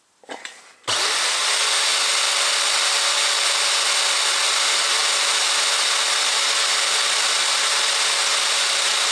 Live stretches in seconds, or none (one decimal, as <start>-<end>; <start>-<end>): 0.0-9.1